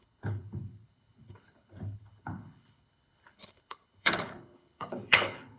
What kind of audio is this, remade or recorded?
remade